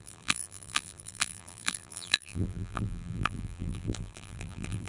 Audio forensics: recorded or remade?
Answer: remade